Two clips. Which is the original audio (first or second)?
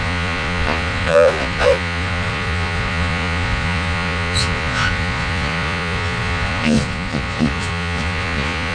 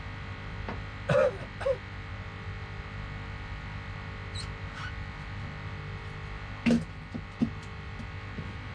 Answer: second